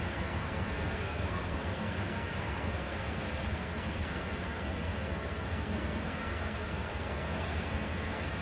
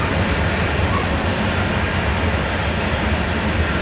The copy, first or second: first